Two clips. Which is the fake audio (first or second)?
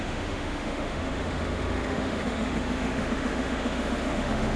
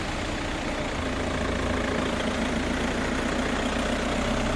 first